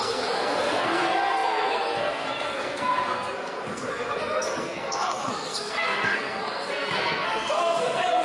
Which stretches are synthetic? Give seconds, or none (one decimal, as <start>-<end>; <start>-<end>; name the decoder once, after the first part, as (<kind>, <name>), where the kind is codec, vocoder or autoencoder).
0.0-8.2 (codec, SNAC)